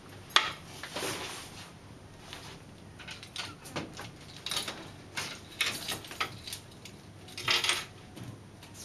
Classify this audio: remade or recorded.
recorded